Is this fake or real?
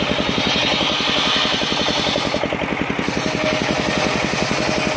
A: real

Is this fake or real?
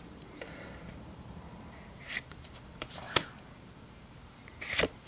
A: fake